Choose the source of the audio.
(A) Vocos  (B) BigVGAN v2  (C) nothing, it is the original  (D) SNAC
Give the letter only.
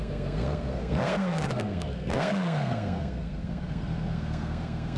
D